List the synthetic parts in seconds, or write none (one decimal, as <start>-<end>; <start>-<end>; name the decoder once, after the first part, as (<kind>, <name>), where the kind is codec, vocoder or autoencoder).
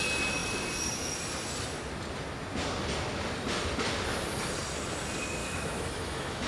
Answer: 5.4-6.5 (autoencoder, DAC-VAE)